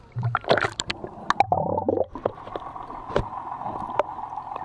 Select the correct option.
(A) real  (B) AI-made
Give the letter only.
A